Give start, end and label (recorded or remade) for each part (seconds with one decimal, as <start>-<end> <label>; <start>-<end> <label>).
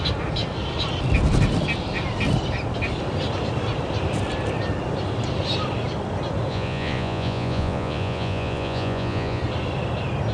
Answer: 0.0-6.5 recorded; 6.5-9.4 remade; 9.4-10.3 recorded